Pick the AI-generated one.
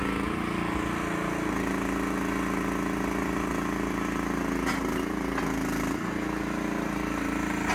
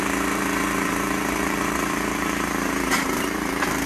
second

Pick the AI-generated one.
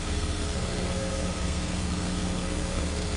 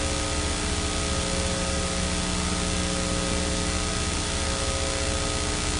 first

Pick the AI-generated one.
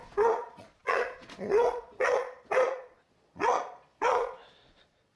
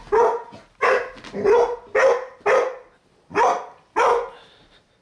first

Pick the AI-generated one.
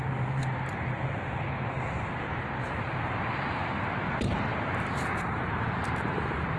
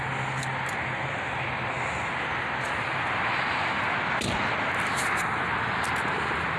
first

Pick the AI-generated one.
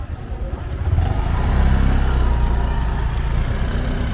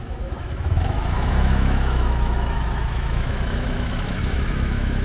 second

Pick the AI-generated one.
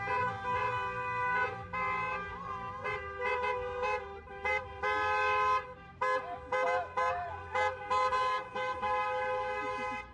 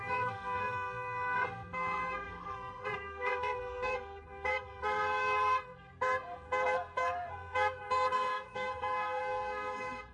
second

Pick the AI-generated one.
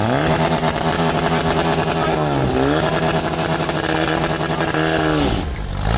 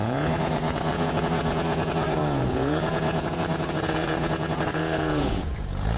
second